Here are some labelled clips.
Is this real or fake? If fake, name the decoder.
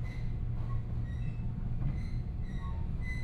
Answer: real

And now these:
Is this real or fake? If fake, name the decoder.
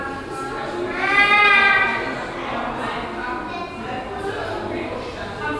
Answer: real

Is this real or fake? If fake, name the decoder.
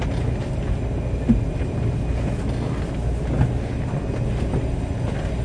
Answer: real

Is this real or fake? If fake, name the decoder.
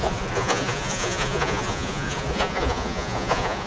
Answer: fake, vocoder, Vocos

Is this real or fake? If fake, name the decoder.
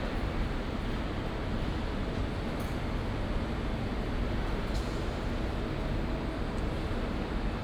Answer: real